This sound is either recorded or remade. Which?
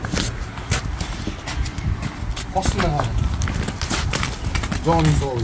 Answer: recorded